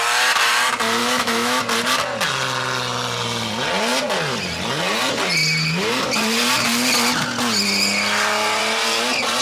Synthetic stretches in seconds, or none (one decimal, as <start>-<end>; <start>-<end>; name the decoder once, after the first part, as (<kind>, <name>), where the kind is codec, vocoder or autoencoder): 1.0-1.6 (autoencoder, DAC-VAE)